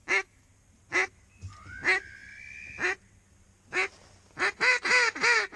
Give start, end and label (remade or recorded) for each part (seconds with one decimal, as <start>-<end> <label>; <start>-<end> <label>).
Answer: 0.0-0.5 remade; 0.5-5.6 recorded